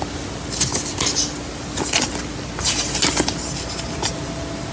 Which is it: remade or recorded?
recorded